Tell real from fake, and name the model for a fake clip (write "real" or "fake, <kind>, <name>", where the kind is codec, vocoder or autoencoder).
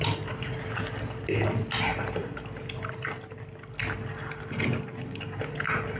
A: real